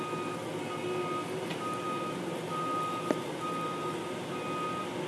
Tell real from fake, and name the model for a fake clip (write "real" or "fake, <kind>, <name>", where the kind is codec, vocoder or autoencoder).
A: real